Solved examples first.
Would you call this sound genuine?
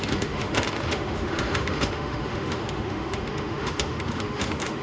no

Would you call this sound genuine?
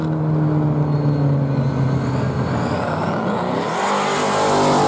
yes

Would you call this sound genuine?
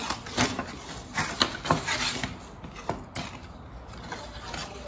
yes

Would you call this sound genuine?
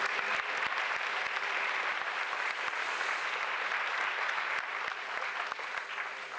yes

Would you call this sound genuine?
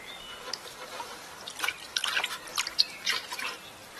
yes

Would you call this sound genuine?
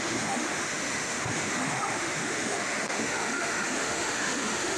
no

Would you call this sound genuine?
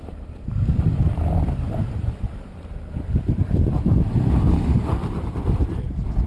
yes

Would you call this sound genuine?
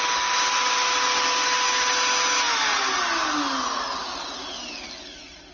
yes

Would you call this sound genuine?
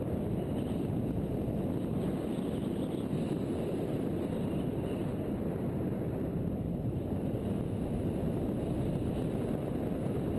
yes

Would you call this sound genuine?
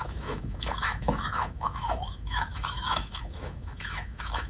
no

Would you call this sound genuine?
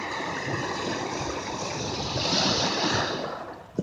yes